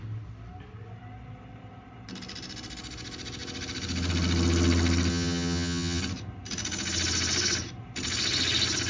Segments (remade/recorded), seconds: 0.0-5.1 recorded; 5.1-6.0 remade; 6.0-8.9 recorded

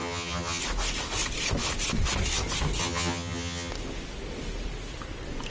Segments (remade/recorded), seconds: 0.0-0.6 remade; 0.6-2.8 recorded; 2.8-3.7 remade; 3.7-5.5 recorded